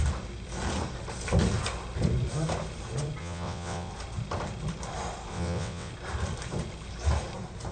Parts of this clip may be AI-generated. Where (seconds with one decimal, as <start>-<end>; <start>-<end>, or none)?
3.2-3.9; 5.3-5.9